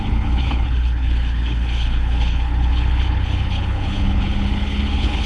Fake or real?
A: fake